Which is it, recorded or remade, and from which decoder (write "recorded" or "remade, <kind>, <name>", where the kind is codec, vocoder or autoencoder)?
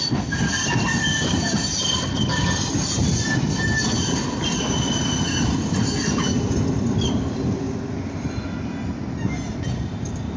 recorded